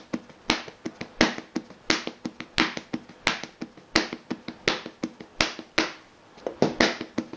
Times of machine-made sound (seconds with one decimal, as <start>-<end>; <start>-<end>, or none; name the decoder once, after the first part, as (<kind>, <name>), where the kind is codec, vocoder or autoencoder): none